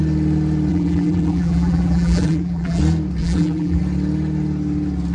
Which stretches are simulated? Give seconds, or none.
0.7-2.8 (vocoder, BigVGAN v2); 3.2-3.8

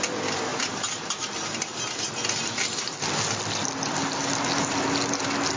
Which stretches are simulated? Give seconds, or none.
none

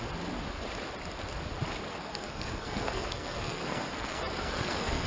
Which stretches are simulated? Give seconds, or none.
1.9-5.1 (codec, SNAC)

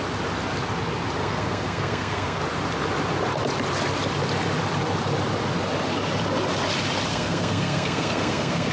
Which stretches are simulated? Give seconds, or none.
1.2-2.4 (codec, SNAC); 7.1-8.7

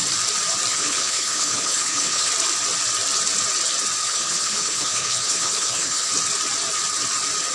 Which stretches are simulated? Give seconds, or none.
0.7-2.3 (codec, HILCodec); 4.0-6.1

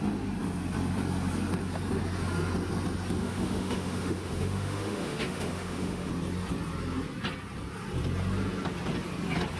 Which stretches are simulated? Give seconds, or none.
3.2-6.1 (autoencoder, DAC-VAE)